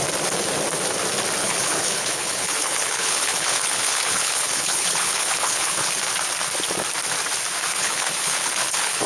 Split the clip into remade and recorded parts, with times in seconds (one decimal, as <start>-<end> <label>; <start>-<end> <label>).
0.0-1.4 recorded; 1.4-5.9 remade; 5.9-7.7 recorded; 7.7-9.1 remade